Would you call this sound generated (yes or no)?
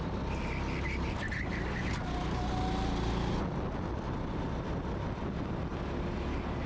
no